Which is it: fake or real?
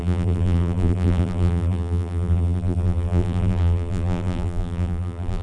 fake